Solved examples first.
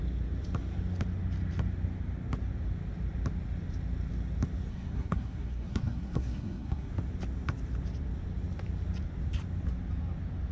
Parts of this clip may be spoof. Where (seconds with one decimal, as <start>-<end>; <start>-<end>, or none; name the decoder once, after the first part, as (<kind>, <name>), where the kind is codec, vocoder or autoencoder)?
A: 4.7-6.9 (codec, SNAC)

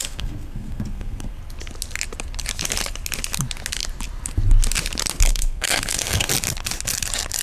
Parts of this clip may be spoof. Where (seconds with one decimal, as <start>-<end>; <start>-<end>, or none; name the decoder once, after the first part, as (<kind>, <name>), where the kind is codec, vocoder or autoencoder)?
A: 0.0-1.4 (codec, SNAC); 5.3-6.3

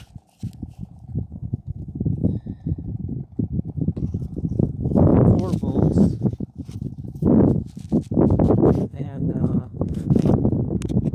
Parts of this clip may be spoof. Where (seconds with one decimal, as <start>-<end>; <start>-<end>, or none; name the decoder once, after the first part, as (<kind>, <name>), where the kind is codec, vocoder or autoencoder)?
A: 1.3-2.0 (codec, SNAC); 8.8-10.3

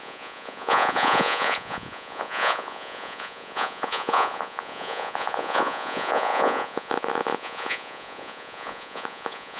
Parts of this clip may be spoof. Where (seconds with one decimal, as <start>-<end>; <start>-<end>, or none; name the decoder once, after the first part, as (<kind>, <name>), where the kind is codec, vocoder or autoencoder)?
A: 0.0-9.6 (vocoder, Vocos)

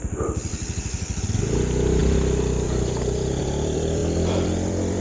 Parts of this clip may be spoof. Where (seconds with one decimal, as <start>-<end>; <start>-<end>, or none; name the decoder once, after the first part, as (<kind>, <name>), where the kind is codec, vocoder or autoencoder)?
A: 0.0-2.0 (vocoder, BigVGAN v2); 3.4-5.0